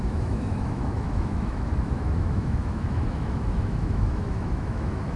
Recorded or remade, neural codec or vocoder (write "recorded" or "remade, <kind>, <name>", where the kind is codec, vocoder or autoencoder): remade, autoencoder, DAC-VAE